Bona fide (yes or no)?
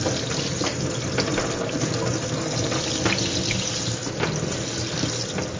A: yes